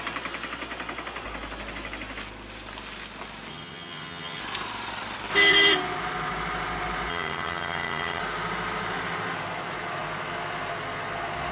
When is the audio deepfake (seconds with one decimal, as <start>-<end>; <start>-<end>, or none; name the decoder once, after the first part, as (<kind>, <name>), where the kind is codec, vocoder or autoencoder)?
3.5-4.4 (vocoder, HiFi-GAN); 7.1-8.2